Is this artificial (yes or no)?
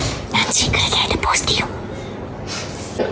no